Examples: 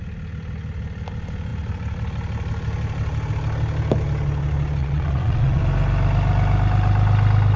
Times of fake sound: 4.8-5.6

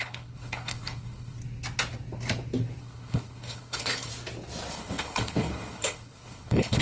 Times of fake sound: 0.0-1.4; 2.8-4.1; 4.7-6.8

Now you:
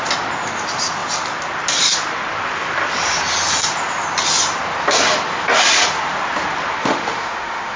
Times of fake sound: 6.8-7.8